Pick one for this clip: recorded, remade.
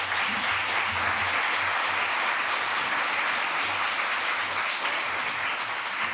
recorded